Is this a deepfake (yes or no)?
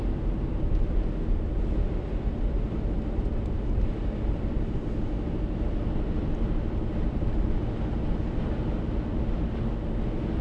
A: no